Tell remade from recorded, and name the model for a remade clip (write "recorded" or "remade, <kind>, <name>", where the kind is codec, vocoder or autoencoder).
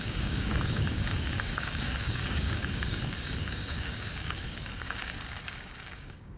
remade, codec, DAC